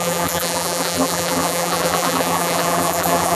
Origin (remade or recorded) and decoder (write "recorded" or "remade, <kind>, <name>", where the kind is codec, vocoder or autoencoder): remade, vocoder, BigVGAN v2